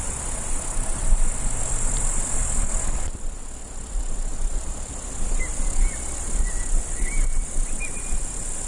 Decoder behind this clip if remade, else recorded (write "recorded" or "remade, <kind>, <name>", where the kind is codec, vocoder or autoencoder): recorded